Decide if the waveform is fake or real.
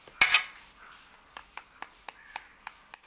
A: real